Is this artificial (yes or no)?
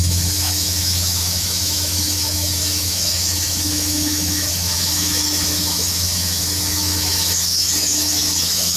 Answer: yes